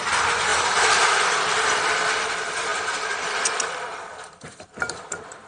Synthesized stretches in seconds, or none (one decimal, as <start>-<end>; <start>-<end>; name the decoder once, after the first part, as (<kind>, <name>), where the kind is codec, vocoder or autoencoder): 0.5-1.2 (vocoder, BigVGAN v2)